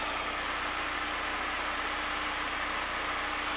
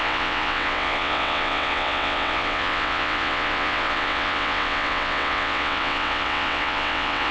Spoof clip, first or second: second